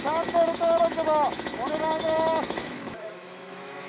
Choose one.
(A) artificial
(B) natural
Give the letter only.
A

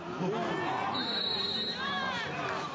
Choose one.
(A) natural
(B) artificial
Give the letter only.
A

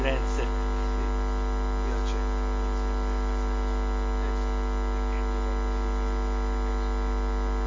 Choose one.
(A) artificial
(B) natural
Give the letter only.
B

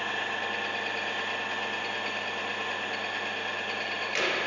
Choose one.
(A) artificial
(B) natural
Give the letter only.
B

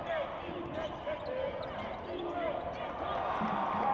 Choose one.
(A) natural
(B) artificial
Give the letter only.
A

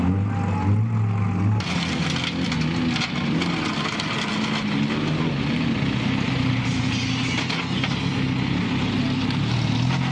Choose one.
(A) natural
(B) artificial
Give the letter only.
A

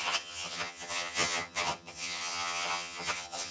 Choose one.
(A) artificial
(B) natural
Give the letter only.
A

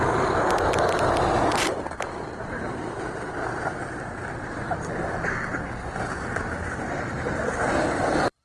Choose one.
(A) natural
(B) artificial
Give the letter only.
B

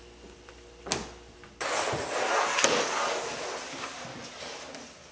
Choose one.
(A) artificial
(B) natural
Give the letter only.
B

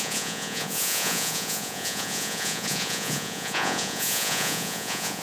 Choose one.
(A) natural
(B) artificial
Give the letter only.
B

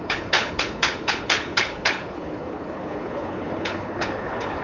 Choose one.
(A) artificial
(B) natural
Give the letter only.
A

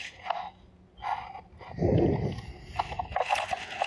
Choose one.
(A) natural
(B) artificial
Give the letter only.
A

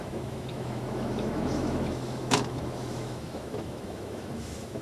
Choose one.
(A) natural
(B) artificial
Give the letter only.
B